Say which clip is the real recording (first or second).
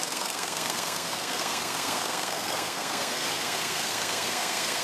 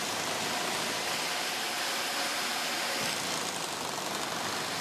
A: second